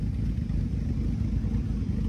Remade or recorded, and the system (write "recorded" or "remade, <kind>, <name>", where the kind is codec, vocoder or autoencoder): recorded